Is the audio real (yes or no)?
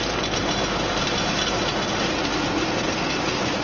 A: yes